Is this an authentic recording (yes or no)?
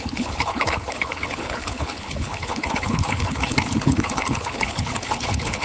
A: no